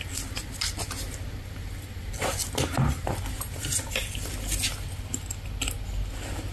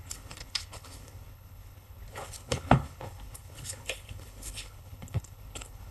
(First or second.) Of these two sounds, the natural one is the first